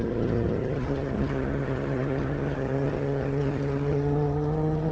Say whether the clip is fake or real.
fake